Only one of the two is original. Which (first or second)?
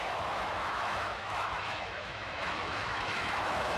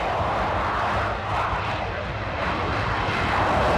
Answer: second